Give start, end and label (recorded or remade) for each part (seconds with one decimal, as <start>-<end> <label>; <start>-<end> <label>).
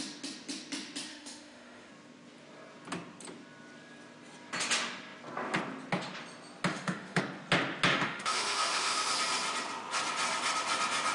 0.0-1.1 recorded; 1.1-1.9 remade; 1.9-6.7 recorded; 6.7-7.2 remade; 7.2-7.9 recorded; 7.9-9.1 remade; 9.1-11.1 recorded